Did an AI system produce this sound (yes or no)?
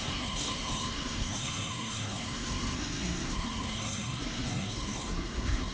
yes